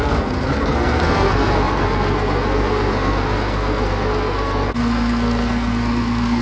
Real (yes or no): no